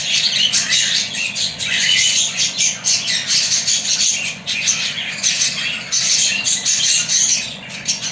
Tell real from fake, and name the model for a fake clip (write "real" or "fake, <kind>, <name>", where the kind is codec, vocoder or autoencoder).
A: fake, vocoder, Vocos